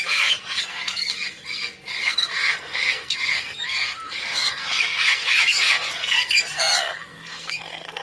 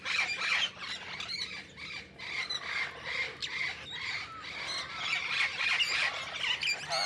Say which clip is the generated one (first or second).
first